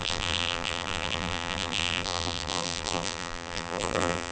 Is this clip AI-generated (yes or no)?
yes